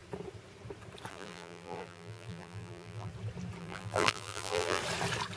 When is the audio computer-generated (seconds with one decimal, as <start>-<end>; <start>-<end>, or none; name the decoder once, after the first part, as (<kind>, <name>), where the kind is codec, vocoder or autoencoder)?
1.1-3.1 (vocoder, BigVGAN v2); 3.6-4.8